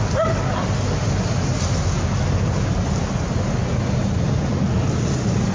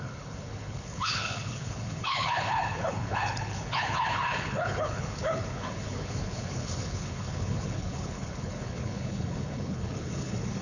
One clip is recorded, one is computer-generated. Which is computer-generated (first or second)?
second